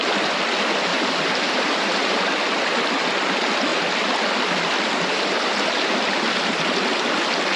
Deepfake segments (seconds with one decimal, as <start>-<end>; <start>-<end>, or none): 0.9-2.2